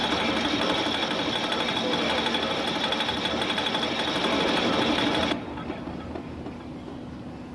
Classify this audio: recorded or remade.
recorded